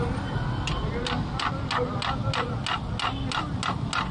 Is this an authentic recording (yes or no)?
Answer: yes